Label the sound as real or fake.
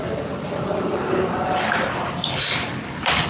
real